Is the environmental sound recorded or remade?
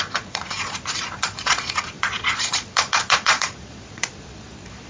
remade